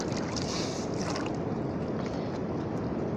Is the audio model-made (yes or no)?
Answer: no